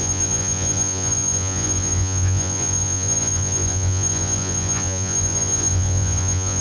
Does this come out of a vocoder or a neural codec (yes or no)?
yes